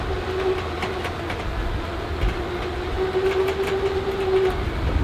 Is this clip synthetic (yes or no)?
no